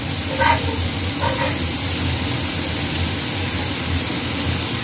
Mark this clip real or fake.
real